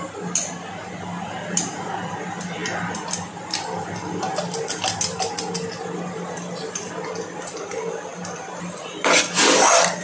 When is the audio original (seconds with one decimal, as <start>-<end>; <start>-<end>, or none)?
0.0-10.0